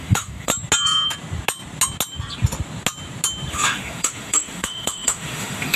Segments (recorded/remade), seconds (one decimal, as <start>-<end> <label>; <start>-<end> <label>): 0.0-0.5 remade; 0.5-3.5 recorded; 3.5-5.8 remade